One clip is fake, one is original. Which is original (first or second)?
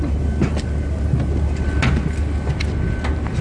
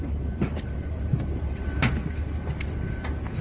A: first